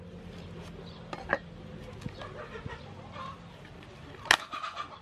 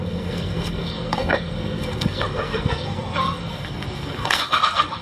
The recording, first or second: first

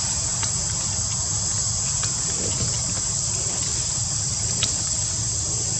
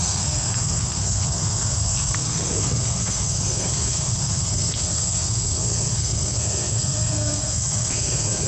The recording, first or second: first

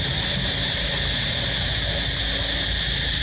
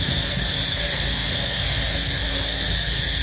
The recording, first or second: first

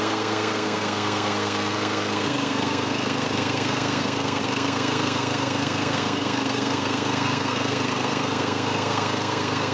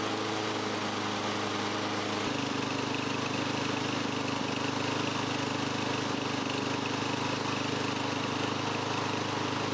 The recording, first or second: second